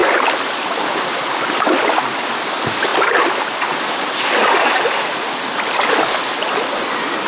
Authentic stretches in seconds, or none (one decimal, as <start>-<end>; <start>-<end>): 0.0-7.3